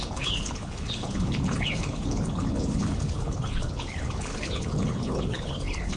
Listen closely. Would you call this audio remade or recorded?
remade